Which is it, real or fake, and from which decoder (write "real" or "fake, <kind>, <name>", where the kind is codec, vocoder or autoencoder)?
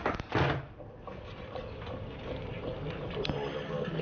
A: real